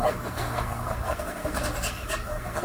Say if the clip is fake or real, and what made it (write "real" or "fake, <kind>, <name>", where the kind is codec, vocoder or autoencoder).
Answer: fake, codec, SNAC